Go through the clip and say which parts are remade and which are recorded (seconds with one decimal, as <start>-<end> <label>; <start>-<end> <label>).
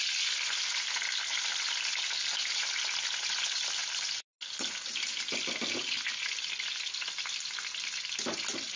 0.0-8.8 recorded